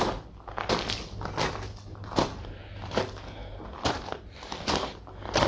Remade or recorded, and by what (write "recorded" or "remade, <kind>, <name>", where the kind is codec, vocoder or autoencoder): recorded